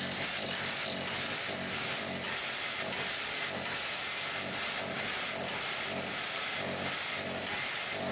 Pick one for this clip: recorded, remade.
recorded